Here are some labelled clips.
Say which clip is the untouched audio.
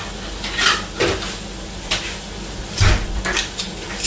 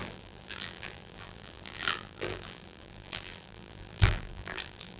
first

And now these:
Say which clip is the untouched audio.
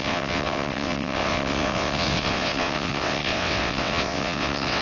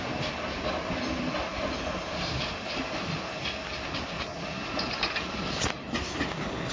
second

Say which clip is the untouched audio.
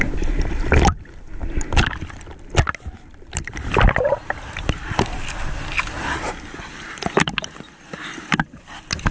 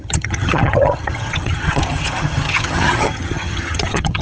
first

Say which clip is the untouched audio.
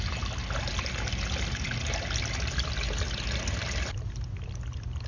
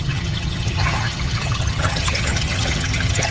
first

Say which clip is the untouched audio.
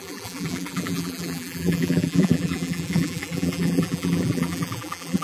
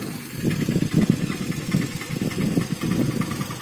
second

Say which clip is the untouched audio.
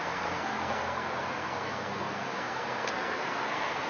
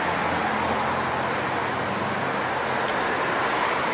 second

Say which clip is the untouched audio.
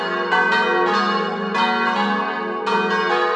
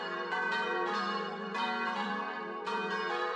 first